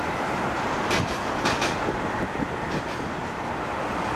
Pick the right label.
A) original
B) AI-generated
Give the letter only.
A